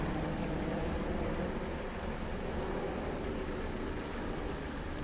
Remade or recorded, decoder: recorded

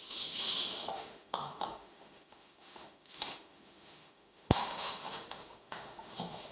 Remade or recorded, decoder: remade, autoencoder, DAC-VAE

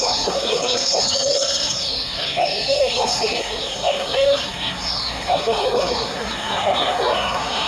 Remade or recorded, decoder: remade, codec, SNAC